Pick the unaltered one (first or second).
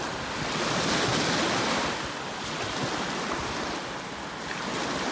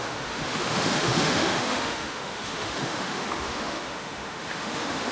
first